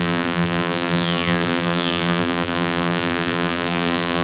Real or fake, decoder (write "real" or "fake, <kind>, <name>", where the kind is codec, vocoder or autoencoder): fake, vocoder, BigVGAN v2